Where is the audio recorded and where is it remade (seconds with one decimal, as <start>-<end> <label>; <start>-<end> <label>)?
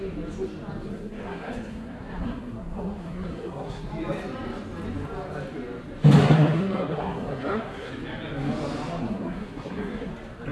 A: 0.0-0.9 recorded; 0.9-3.9 remade; 3.9-6.2 recorded; 6.2-7.9 remade; 7.9-9.0 recorded; 9.0-10.1 remade; 10.1-10.5 recorded